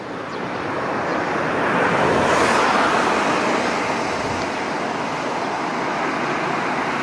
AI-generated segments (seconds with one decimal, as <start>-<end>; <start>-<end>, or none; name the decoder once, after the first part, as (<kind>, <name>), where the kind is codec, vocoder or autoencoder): none